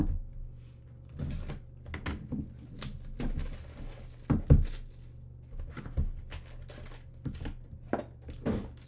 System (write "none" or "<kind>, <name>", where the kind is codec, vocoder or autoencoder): none